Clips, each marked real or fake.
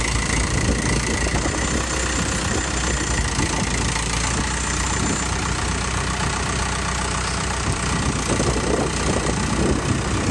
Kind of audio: real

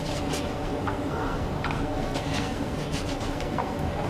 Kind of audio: fake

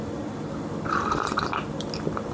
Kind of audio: real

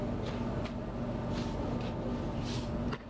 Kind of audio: real